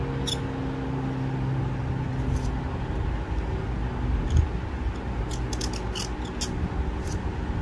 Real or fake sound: real